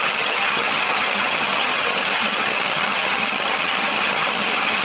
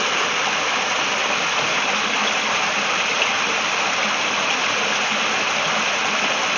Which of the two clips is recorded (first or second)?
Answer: second